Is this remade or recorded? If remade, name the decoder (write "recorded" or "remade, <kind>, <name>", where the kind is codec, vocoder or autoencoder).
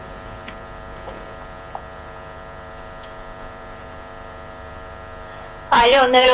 remade, vocoder, Vocos